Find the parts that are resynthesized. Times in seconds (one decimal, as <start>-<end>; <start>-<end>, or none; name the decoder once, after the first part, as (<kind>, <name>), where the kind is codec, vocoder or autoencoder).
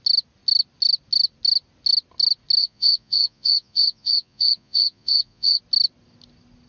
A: 2.6-5.6 (vocoder, Vocos)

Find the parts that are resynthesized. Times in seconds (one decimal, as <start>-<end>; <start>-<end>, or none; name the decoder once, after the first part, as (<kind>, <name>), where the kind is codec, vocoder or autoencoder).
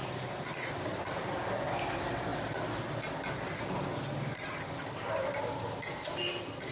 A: 0.0-0.7 (vocoder, BigVGAN v2)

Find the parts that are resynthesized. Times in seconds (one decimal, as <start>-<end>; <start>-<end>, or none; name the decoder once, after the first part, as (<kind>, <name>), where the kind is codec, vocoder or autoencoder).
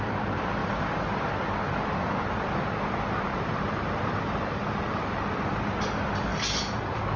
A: 0.6-1.3 (vocoder, BigVGAN v2); 3.3-5.1